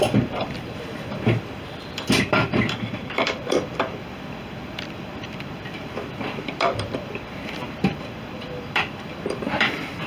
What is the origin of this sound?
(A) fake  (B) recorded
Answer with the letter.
A